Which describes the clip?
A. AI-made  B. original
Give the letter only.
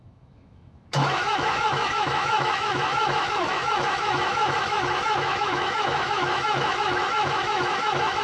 A